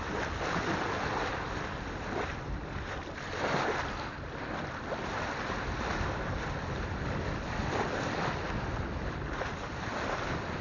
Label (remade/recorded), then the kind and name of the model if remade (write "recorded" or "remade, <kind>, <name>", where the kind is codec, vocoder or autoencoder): recorded